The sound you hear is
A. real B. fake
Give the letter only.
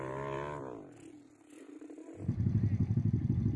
A